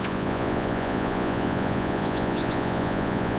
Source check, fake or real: fake